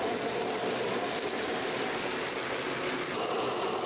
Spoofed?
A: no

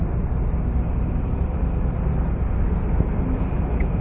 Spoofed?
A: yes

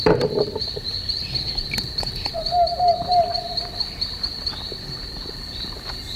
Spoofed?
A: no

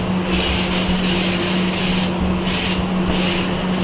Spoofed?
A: no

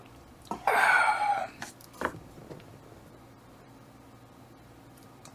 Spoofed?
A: yes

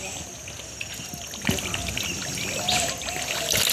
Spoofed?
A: no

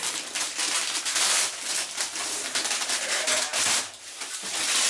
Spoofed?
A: yes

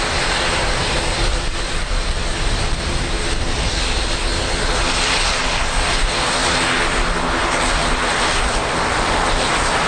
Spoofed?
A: no